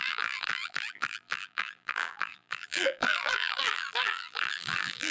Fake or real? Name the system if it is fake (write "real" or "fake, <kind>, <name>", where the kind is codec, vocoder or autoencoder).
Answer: fake, vocoder, BigVGAN v2